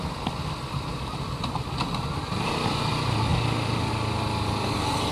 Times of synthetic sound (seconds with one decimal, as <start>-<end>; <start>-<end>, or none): none